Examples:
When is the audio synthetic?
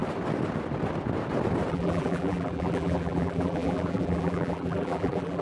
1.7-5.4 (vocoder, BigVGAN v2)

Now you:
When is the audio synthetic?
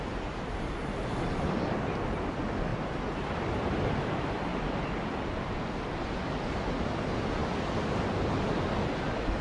none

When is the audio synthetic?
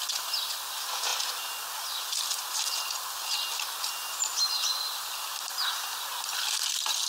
none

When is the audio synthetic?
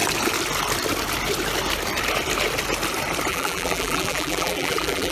3.3-5.1 (vocoder, BigVGAN v2)